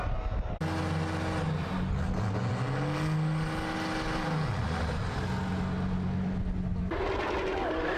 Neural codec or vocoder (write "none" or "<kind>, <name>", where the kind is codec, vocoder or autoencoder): none